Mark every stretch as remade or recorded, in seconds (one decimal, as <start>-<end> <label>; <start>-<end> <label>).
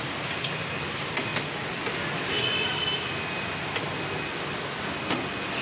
0.0-5.6 recorded